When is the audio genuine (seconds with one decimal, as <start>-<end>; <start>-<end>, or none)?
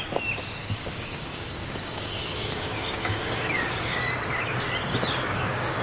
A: 0.0-0.6; 4.1-4.9